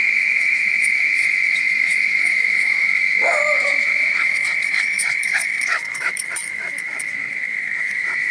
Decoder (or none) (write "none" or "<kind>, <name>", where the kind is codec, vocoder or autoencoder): autoencoder, DAC-VAE